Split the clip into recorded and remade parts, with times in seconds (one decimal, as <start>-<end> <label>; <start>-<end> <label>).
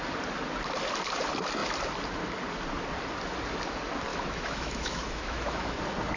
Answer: 0.0-4.1 recorded; 4.1-5.8 remade; 5.8-6.2 recorded